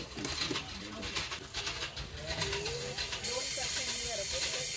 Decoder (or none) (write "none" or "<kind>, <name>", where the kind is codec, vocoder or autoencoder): none